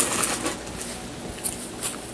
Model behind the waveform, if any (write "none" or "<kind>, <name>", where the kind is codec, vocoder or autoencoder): none